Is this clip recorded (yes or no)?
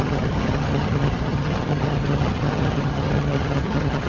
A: no